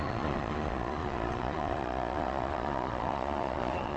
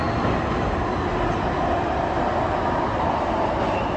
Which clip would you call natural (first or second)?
second